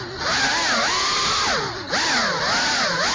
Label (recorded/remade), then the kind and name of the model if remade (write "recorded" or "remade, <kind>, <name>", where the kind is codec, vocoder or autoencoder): recorded